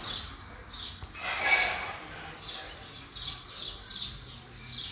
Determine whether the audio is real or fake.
real